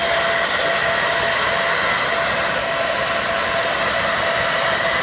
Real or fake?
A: real